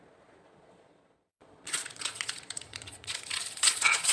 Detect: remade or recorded remade